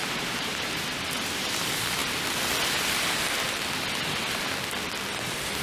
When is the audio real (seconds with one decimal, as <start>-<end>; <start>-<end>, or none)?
1.6-5.6